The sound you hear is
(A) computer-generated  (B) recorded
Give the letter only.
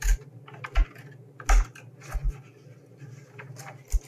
B